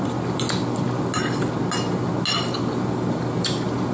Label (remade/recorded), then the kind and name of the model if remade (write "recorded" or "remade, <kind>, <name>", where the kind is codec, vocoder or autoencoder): recorded